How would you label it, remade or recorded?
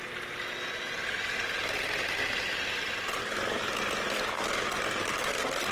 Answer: recorded